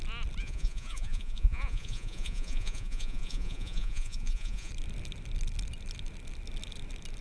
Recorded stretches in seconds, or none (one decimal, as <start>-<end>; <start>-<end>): 0.0-0.4; 4.7-7.2